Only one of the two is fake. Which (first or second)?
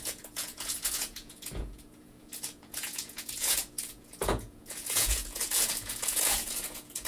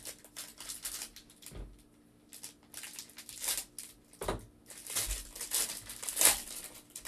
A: first